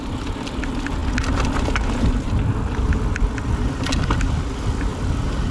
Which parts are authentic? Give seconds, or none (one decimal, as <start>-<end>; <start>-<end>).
0.0-5.5